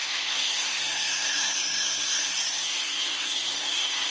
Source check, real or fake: fake